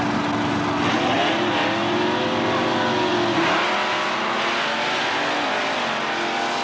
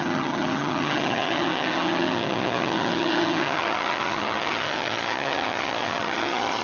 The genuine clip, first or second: first